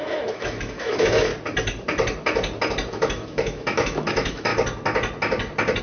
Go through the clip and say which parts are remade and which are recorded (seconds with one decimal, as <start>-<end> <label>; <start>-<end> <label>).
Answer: 0.0-1.3 remade; 1.3-2.9 recorded; 2.9-4.5 remade; 4.5-5.8 recorded